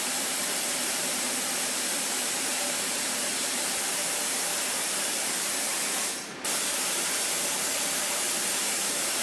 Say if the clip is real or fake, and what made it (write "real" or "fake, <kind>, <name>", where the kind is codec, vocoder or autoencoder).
fake, vocoder, BigVGAN v2